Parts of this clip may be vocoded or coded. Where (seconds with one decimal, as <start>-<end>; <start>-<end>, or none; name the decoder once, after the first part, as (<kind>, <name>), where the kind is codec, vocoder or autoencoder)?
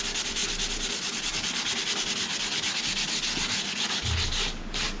none